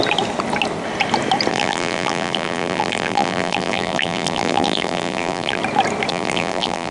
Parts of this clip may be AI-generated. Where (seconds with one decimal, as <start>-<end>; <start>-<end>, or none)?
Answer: 1.5-5.6; 6.1-6.9